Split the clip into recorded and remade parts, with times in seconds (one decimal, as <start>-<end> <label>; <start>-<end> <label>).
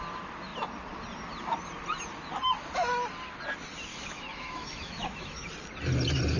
0.0-3.9 recorded; 3.9-5.5 remade; 5.5-6.4 recorded